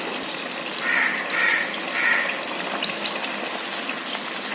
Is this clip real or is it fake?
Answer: real